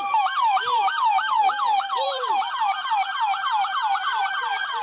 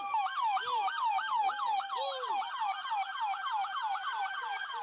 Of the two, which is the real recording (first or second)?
second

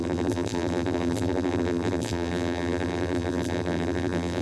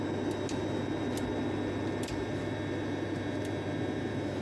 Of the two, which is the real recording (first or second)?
second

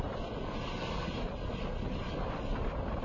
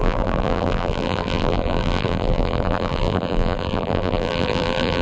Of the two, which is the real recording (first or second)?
first